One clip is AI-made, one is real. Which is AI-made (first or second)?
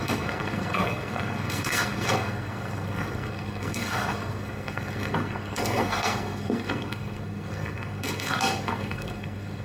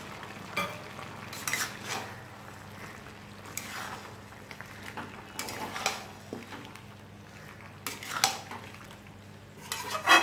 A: first